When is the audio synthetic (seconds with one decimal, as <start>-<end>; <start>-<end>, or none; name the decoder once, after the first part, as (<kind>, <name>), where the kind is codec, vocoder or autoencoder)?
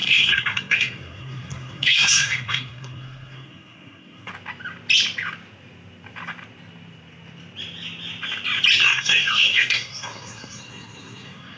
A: 0.0-4.3 (codec, SNAC); 8.8-11.6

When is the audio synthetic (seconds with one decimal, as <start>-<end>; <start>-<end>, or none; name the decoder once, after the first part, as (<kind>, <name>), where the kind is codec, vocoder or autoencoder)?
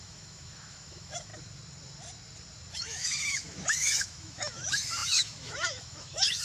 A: 0.0-1.3 (autoencoder, DAC-VAE); 2.7-6.4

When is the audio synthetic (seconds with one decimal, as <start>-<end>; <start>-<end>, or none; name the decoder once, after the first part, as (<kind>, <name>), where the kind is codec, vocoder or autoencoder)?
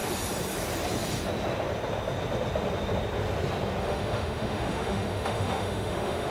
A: 3.8-6.3 (autoencoder, DAC-VAE)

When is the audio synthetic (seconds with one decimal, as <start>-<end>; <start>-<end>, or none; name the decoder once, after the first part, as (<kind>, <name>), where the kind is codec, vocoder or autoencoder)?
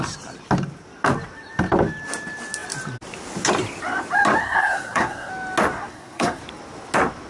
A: 4.4-5.3 (codec, SNAC); 5.9-6.4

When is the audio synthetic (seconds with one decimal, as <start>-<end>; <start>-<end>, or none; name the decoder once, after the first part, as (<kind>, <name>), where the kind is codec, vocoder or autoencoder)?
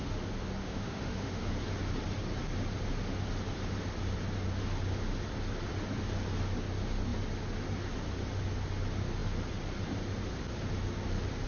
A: 0.6-1.5 (autoencoder, DAC-VAE)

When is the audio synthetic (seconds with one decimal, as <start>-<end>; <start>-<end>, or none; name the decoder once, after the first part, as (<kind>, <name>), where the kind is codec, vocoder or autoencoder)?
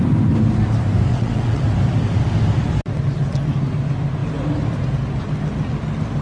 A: 1.1-1.6 (vocoder, WaveNeXt)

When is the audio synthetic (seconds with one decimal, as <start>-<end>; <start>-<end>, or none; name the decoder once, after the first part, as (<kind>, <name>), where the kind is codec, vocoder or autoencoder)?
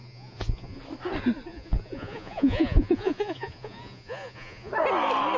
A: 0.0-0.8 (vocoder, Vocos); 1.5-4.7